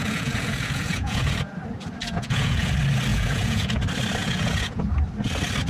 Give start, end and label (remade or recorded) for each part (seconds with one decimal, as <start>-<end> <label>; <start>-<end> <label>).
0.0-1.6 remade; 1.6-2.0 recorded; 2.0-2.7 remade; 2.7-3.1 recorded; 3.1-3.8 remade; 3.8-4.2 recorded; 4.2-5.0 remade; 5.0-5.7 recorded